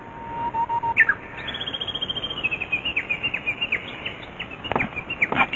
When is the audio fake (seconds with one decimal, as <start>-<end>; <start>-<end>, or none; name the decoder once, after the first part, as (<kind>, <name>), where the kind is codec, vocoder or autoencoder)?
none